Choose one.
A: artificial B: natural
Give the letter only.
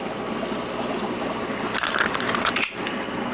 B